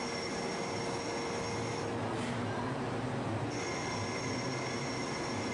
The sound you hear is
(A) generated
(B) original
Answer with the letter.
B